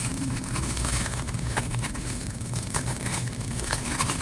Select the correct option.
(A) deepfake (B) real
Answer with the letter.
A